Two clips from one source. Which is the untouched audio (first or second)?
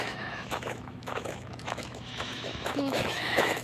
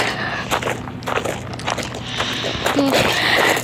second